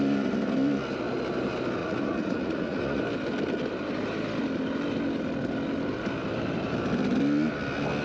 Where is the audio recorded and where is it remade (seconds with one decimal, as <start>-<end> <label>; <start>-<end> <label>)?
0.0-1.8 recorded; 1.8-3.0 remade; 3.0-8.0 recorded